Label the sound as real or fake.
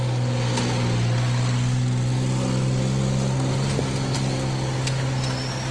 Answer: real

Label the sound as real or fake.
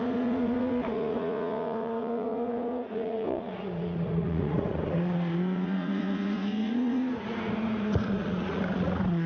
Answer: fake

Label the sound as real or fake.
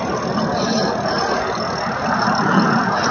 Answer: real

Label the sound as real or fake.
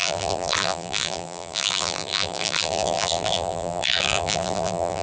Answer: fake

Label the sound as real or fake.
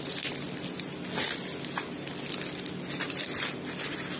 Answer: real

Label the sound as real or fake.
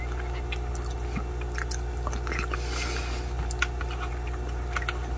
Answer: real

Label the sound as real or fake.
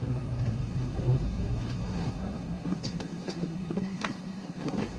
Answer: fake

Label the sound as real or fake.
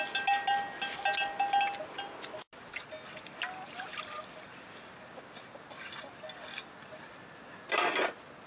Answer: real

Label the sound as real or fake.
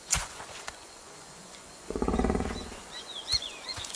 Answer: fake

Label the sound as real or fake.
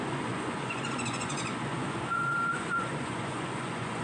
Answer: fake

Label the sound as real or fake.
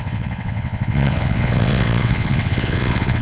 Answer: fake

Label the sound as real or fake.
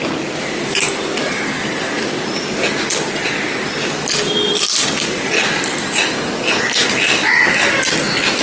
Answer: real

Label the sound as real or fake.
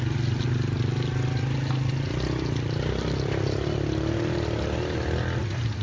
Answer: real